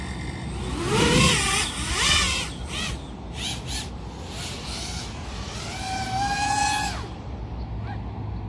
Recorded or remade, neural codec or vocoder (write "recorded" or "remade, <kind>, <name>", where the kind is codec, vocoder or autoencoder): recorded